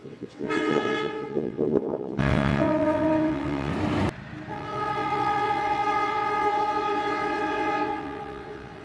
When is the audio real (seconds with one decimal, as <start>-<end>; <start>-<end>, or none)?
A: 3.7-4.5